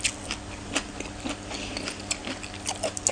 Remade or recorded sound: recorded